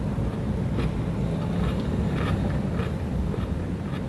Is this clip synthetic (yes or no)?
no